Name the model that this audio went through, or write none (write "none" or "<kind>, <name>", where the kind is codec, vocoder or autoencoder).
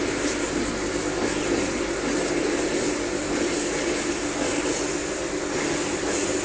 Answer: none